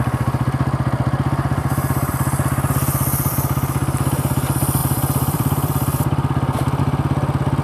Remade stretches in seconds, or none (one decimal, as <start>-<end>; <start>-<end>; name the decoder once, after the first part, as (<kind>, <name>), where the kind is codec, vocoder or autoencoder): 4.8-6.8 (vocoder, BigVGAN v2)